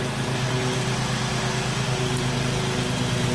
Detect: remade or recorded recorded